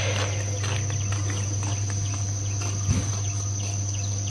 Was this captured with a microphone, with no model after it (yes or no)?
yes